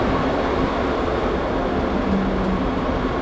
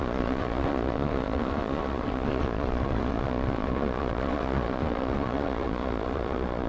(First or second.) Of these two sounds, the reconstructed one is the second